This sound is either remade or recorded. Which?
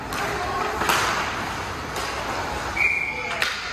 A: recorded